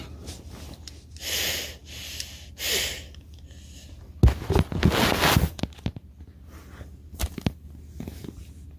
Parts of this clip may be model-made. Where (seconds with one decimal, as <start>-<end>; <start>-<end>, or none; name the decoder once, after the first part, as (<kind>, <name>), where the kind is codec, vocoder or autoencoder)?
none